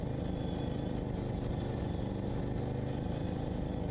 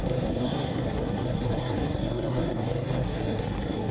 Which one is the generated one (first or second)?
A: second